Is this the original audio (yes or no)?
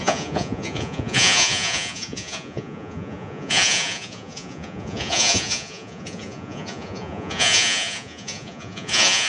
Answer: no